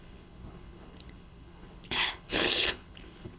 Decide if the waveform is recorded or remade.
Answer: remade